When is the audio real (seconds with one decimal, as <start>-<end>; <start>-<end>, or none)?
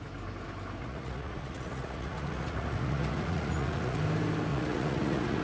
0.0-0.8; 4.0-4.5